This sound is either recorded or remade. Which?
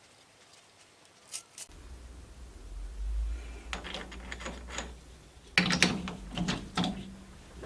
recorded